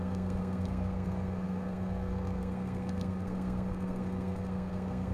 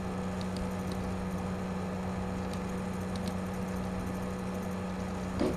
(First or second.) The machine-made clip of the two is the first